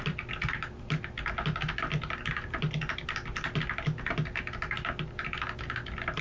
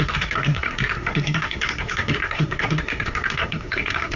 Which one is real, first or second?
first